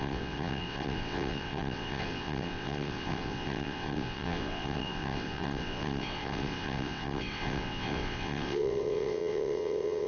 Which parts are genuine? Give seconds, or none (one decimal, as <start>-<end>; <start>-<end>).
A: none